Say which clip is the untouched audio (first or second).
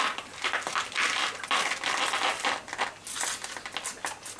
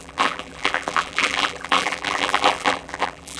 first